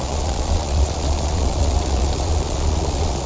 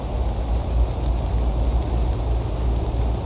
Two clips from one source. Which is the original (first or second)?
second